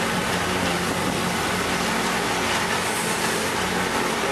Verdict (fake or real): real